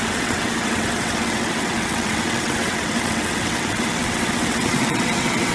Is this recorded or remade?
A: remade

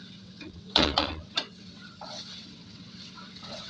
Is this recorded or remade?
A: remade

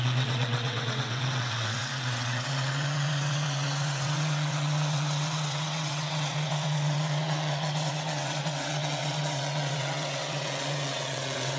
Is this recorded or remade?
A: remade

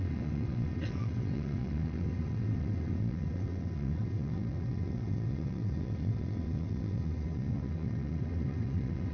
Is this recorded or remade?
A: remade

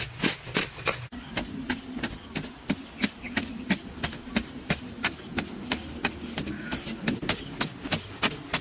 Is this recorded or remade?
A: recorded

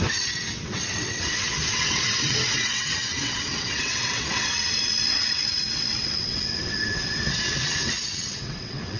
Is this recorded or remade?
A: remade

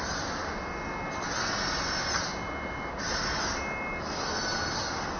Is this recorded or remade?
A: recorded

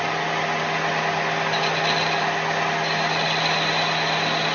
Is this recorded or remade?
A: recorded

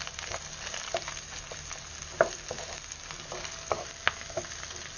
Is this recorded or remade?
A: recorded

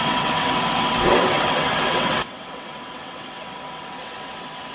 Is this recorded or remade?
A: remade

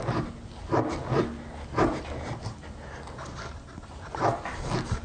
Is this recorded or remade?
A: recorded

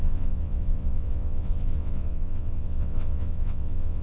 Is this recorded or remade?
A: remade